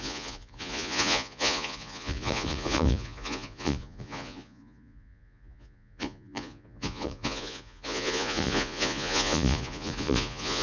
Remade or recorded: remade